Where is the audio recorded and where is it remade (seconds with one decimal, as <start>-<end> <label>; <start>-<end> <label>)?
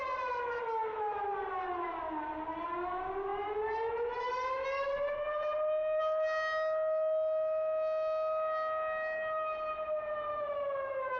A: 0.0-10.3 recorded; 10.3-11.2 remade